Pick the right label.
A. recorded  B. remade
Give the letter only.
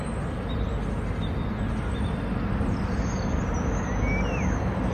A